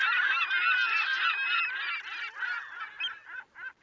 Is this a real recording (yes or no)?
yes